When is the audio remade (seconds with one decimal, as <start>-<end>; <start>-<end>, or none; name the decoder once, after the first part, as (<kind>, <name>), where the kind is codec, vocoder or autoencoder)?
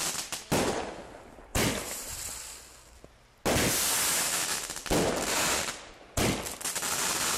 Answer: none